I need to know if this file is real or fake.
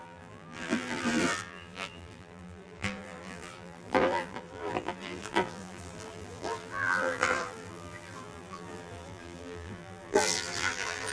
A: fake